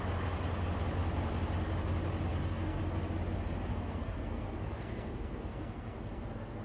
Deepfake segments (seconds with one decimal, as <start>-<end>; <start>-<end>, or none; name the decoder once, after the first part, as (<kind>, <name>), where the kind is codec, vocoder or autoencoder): 2.3-2.8 (codec, SNAC); 3.7-6.6